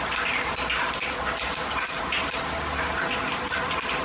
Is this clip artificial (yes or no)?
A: no